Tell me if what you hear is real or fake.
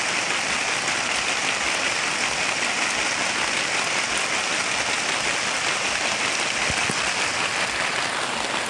real